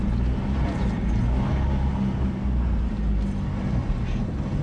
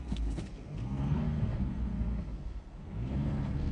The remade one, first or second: second